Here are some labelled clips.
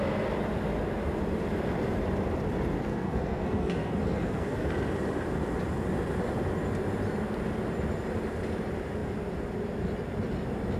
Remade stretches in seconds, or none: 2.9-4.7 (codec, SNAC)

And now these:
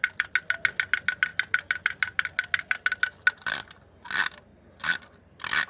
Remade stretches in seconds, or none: none

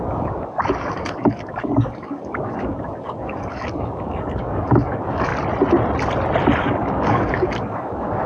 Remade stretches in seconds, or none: 0.0-5.3 (codec, DAC); 6.6-8.3